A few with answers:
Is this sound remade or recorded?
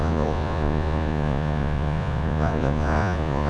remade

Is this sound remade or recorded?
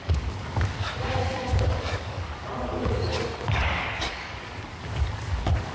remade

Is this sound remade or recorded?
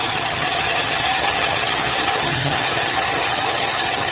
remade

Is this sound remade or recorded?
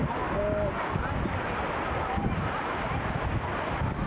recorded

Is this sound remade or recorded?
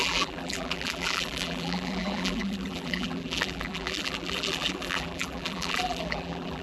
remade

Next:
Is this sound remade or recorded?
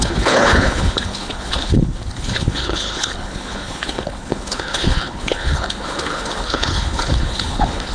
remade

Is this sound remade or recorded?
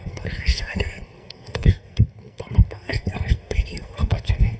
remade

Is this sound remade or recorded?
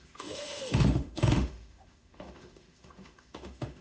remade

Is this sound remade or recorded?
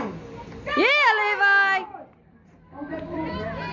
recorded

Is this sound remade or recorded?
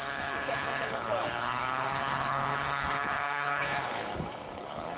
remade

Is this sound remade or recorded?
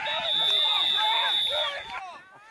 recorded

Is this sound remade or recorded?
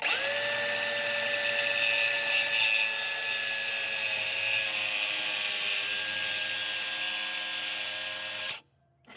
recorded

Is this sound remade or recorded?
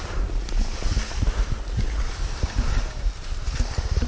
recorded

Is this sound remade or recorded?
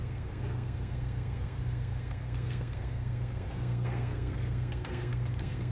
remade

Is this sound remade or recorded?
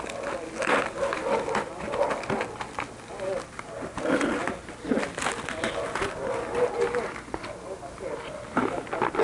recorded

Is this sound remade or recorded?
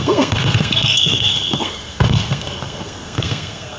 remade